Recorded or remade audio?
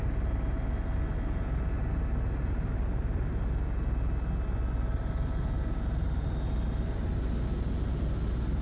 recorded